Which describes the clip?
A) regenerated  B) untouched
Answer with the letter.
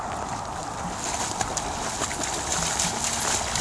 B